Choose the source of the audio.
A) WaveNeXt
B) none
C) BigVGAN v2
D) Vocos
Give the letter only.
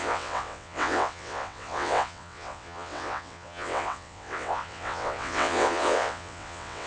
A